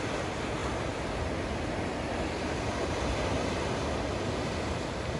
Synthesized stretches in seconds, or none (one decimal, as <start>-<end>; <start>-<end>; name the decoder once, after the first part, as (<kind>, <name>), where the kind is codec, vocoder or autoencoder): none